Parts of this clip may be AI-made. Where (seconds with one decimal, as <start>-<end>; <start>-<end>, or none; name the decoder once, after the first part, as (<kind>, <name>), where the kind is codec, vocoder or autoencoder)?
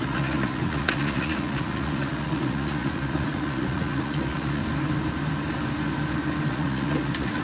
0.0-4.6 (vocoder, Vocos); 6.5-7.4